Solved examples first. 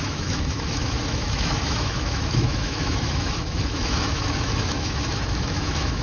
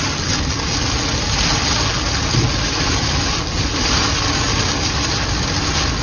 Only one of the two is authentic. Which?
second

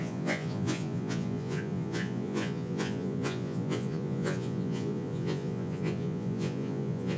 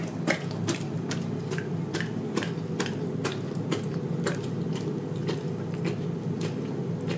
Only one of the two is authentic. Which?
second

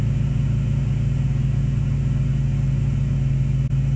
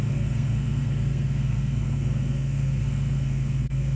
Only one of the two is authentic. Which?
first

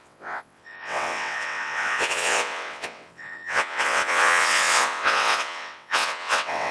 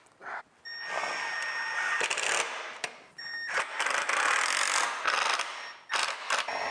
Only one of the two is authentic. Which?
second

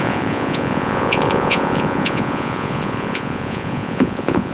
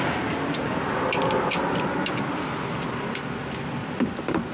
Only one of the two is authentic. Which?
second